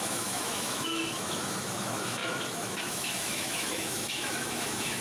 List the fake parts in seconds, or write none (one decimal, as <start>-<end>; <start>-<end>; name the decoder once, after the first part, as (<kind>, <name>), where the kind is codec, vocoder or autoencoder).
0.0-5.0 (autoencoder, DAC-VAE)